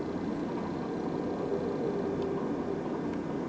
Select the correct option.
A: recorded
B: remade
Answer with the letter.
A